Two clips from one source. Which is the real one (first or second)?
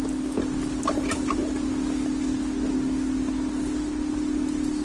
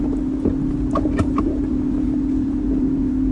first